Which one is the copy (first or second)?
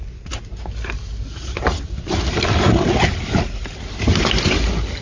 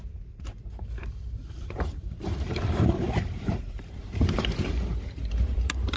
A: second